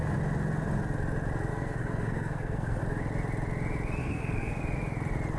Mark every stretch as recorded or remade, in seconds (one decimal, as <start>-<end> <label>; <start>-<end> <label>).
0.0-1.5 recorded; 1.5-2.8 remade; 2.8-4.0 recorded; 4.0-4.6 remade; 4.6-5.4 recorded